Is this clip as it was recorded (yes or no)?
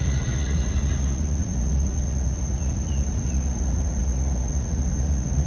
no